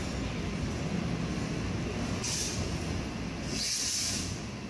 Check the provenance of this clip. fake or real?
real